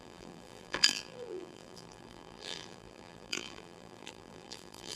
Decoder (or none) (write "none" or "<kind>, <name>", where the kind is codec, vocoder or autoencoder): vocoder, BigVGAN v2